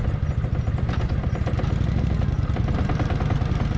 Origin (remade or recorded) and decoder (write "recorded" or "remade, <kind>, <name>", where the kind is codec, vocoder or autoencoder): recorded